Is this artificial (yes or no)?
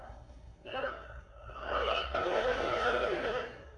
yes